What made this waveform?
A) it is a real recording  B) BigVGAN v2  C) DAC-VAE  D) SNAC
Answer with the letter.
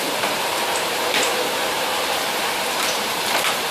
B